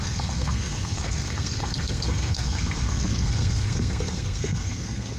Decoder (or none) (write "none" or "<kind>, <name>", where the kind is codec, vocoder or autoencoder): codec, SNAC